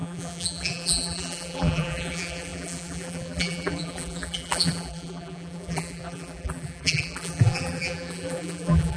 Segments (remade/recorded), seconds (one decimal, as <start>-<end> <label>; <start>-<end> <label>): 0.0-9.0 remade